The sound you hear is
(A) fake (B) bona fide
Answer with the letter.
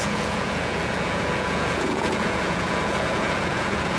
A